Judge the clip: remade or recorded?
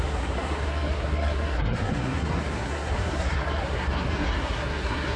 remade